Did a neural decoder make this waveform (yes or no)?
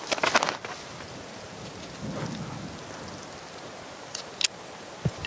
no